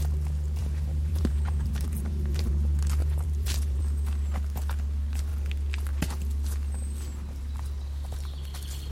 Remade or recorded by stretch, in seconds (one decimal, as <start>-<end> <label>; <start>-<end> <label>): 0.0-0.6 recorded; 0.6-2.5 remade; 2.5-3.0 recorded; 3.0-3.8 remade; 3.8-8.9 recorded